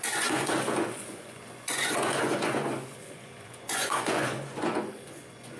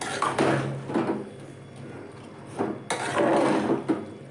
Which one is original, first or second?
second